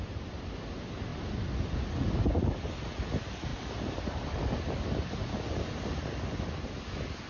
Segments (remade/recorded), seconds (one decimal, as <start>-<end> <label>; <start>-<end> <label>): 0.0-3.5 recorded; 3.5-7.3 remade